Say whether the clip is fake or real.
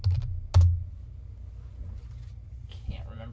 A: real